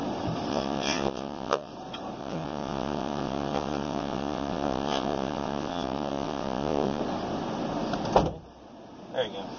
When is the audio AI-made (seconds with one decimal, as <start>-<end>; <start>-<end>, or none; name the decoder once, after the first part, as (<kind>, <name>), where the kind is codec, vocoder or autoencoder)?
0.5-1.7 (vocoder, WaveNeXt); 2.2-7.0